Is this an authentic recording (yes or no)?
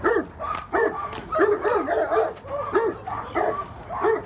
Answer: yes